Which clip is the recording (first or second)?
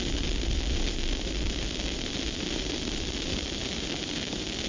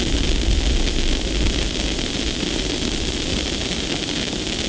second